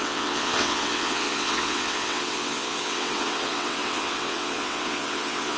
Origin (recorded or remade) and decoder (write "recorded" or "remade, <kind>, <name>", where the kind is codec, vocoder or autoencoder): remade, vocoder, WaveNeXt